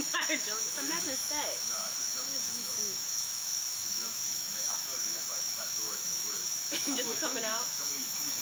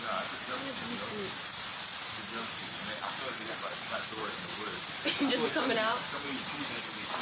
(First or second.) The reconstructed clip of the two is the first